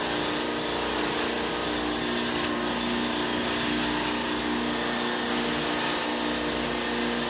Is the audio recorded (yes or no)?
yes